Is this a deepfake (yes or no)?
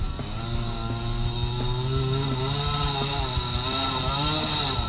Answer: no